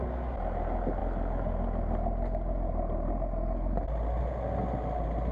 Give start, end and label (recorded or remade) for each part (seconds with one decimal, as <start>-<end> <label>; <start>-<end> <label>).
0.0-5.3 recorded